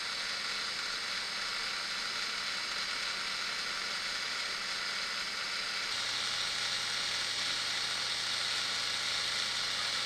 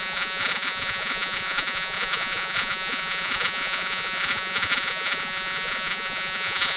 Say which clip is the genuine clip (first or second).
first